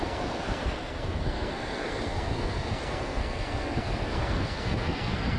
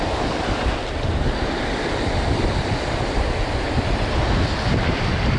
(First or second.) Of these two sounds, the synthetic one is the first